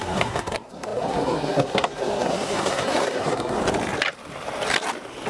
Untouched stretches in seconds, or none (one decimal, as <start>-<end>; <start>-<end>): 3.6-5.3